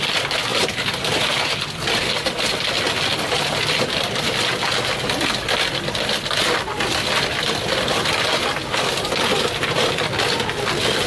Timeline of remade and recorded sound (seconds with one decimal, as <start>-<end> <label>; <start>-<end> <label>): 0.0-11.1 recorded